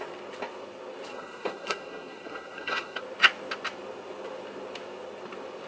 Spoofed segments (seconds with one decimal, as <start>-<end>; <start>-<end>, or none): 1.1-3.0